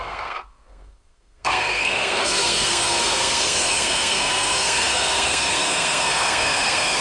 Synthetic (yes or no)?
yes